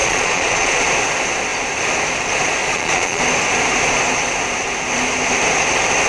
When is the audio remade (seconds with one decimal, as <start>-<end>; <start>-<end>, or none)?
0.0-0.8; 2.6-3.2